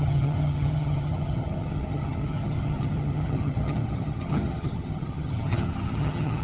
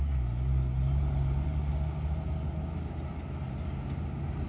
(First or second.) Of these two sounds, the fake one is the first